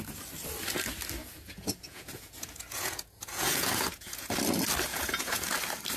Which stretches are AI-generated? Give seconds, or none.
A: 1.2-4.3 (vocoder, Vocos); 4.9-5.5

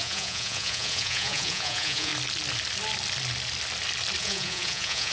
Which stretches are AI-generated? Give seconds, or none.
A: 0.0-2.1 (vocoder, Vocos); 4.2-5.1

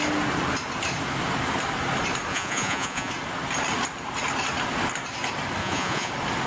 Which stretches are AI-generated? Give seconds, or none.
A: 2.3-3.1 (vocoder, Vocos); 5.6-6.1

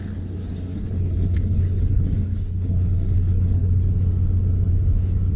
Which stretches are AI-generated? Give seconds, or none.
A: 0.7-3.9 (codec, HILCodec)

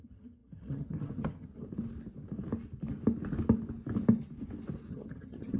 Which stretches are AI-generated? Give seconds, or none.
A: 0.0-1.5 (vocoder, HiFi-GAN); 4.9-5.6

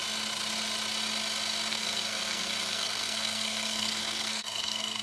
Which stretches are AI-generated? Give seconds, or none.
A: 1.7-5.0 (codec, SNAC)